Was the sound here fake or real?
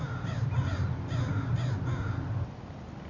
real